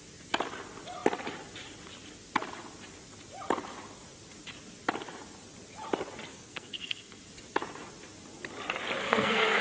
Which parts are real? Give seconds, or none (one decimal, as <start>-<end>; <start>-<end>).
0.0-6.3; 7.2-9.0